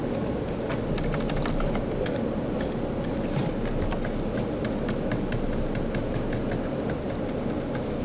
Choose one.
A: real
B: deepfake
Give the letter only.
A